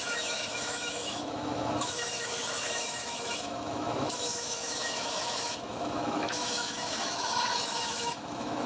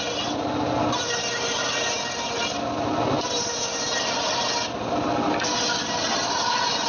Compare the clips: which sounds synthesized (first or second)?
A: first